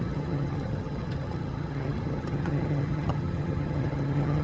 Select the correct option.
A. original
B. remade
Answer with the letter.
B